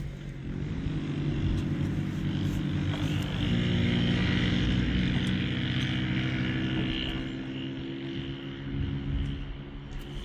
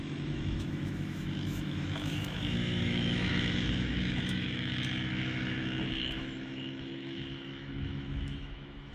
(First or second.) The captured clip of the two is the first